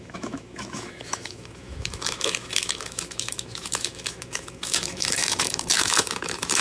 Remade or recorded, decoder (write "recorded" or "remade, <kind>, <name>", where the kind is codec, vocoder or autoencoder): remade, autoencoder, DAC-VAE